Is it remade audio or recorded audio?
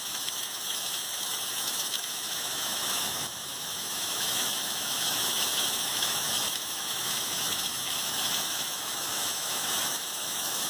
remade